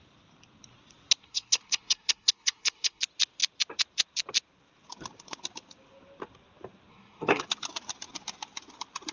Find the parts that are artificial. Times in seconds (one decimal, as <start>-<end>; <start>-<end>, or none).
1.2-3.0; 6.9-7.4